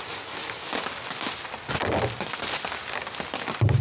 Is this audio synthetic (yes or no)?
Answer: no